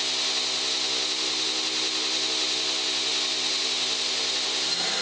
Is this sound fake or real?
real